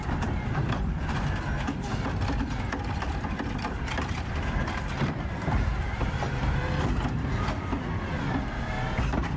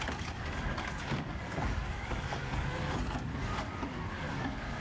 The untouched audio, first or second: first